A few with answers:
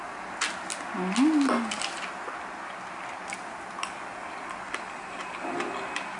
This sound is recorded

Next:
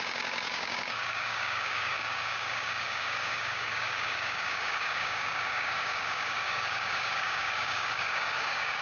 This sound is remade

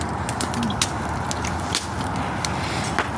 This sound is recorded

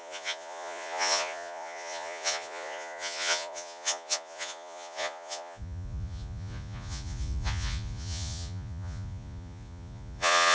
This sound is remade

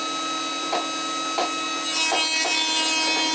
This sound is recorded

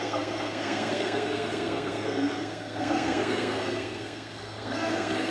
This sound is remade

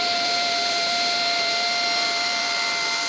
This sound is remade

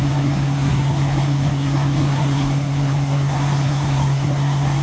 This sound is remade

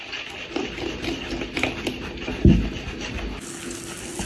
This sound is recorded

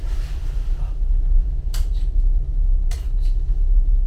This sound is recorded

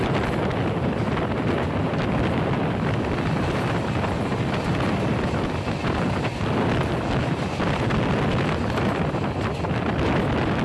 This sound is recorded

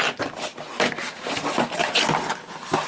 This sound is remade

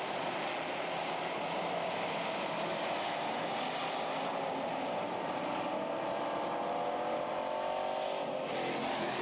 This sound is recorded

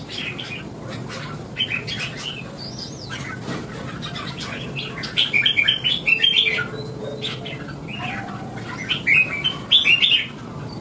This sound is recorded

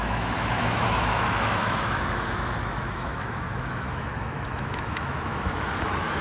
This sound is remade